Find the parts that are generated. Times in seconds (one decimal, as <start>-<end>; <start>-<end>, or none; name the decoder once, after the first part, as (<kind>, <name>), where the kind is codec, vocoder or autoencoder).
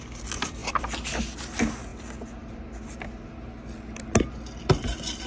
none